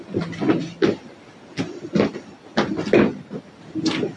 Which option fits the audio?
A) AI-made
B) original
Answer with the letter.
B